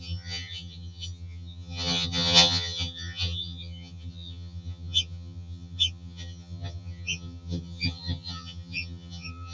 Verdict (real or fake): fake